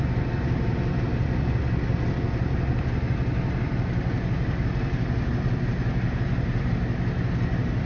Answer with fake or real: real